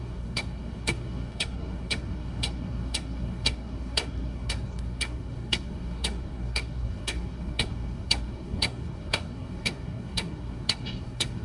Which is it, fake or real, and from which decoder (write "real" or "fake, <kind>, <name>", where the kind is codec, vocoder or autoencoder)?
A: fake, codec, SNAC